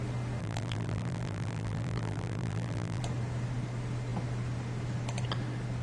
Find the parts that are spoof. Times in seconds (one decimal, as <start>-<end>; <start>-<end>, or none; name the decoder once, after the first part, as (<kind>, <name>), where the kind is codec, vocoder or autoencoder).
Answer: 0.4-3.0 (vocoder, BigVGAN v2)